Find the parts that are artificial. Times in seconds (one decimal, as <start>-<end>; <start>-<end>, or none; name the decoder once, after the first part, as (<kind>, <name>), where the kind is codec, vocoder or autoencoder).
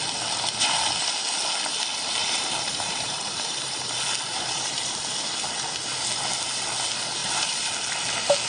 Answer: 2.2-3.8 (vocoder, BigVGAN v2); 4.3-4.9; 7.2-7.7